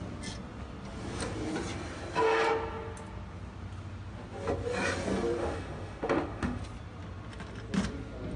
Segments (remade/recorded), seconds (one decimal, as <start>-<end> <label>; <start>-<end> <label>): 0.0-5.4 recorded; 5.4-6.6 remade; 6.6-8.4 recorded